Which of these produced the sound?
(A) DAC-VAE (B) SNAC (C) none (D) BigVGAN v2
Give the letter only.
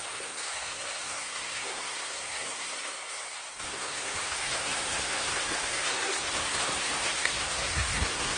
B